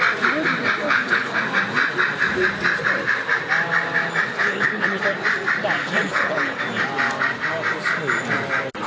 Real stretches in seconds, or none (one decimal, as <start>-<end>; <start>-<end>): 0.0-0.8; 1.4-4.3; 5.0-5.8; 6.6-8.9